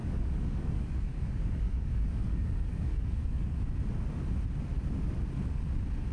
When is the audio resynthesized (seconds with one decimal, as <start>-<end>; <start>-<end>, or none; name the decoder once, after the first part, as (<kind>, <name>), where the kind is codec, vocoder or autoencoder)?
0.0-3.6 (codec, DAC)